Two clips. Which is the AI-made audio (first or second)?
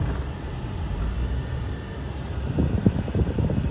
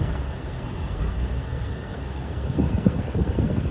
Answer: second